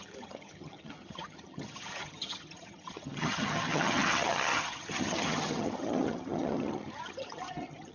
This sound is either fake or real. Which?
fake